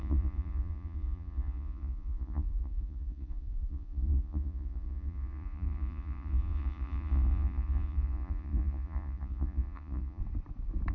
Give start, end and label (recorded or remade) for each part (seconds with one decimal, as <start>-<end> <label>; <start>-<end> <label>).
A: 0.0-10.2 remade; 10.2-10.9 recorded